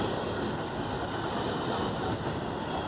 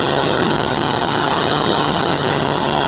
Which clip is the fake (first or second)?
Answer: second